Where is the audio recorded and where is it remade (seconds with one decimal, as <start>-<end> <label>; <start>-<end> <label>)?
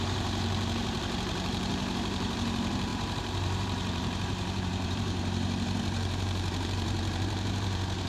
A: 0.0-8.1 remade